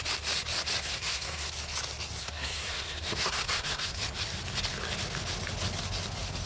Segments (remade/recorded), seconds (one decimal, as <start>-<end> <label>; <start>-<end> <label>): 0.0-0.8 recorded; 0.8-1.5 remade; 1.5-2.2 recorded; 2.2-4.0 remade; 4.0-6.5 recorded